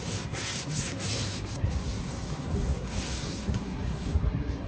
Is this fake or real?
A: fake